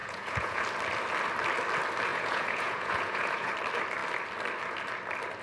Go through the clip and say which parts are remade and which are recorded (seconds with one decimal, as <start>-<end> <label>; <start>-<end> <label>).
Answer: 0.0-0.6 remade; 0.6-2.1 recorded; 2.1-3.5 remade; 3.5-5.4 recorded